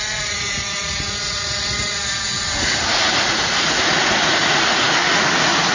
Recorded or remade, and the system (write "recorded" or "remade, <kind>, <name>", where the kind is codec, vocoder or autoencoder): remade, vocoder, Vocos